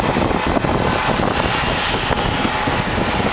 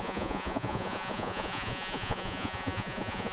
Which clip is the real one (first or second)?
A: first